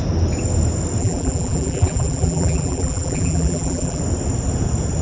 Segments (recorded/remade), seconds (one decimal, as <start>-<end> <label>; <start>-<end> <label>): 0.0-1.0 recorded; 1.0-4.0 remade; 4.0-5.0 recorded